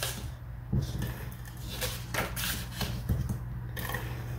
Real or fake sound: real